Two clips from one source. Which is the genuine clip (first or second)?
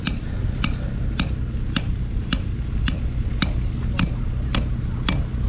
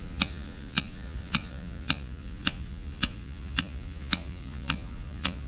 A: first